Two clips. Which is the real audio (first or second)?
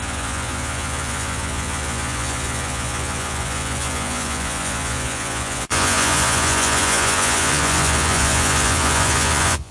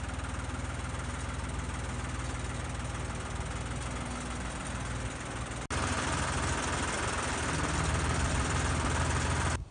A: second